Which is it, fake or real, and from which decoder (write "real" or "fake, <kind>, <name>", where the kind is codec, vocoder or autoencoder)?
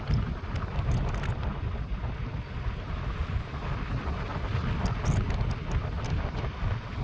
real